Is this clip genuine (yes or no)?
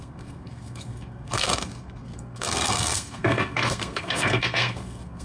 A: no